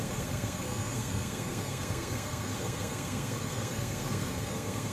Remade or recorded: remade